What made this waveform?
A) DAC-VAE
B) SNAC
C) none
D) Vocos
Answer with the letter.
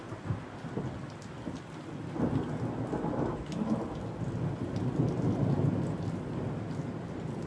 C